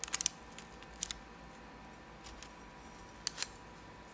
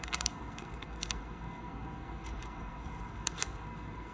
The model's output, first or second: second